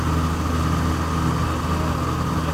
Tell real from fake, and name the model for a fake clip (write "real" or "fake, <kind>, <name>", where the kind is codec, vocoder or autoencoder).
real